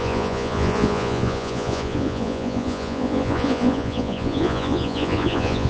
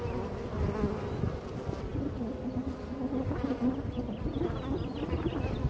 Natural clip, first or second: second